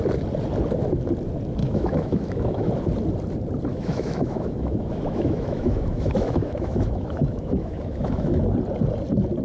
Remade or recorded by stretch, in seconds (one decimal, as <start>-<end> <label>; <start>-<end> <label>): 0.0-1.6 recorded; 1.6-2.7 remade; 2.7-3.7 recorded; 3.7-8.4 remade; 8.4-9.4 recorded